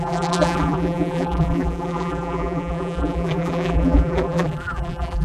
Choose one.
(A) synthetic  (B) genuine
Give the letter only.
A